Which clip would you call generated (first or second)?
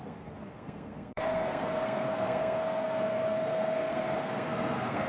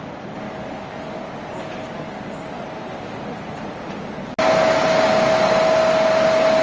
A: first